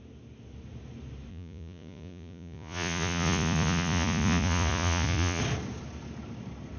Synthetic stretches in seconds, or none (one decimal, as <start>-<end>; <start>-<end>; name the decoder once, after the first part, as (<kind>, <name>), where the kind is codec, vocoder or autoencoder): 1.3-5.4 (vocoder, Vocos)